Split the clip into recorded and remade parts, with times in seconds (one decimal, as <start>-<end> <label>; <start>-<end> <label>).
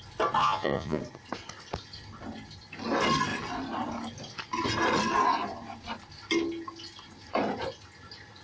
0.0-0.4 recorded; 0.4-1.0 remade; 1.0-8.4 recorded